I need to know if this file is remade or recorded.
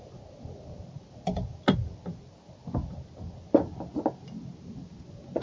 recorded